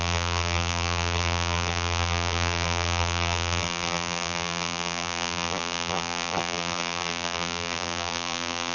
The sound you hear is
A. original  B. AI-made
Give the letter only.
B